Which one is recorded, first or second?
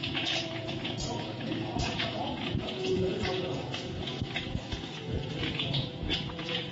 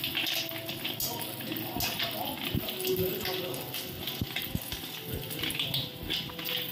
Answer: second